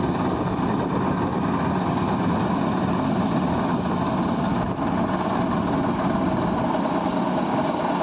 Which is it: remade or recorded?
recorded